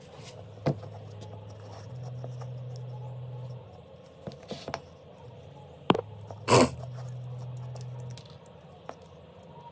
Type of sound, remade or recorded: recorded